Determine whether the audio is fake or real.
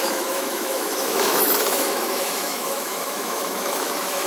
fake